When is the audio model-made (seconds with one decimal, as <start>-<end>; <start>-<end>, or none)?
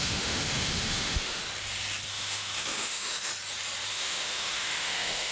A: 0.0-1.4; 2.1-3.3; 3.9-5.3